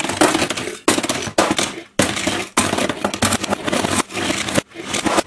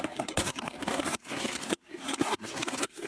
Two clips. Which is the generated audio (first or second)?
second